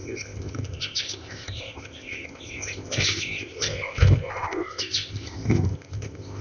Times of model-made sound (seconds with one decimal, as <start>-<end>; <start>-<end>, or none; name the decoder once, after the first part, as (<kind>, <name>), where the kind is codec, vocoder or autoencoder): 0.0-6.4 (codec, ZipCodec)